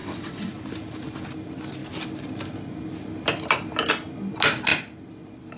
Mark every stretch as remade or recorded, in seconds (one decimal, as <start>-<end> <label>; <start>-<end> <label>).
0.0-0.5 remade; 0.5-5.6 recorded